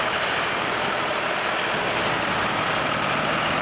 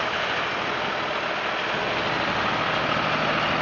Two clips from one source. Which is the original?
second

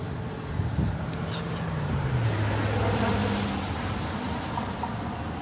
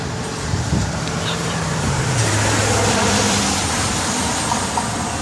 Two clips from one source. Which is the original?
first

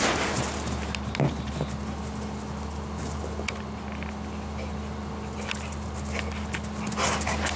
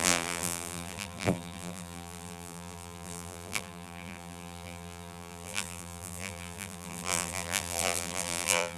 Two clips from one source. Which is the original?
first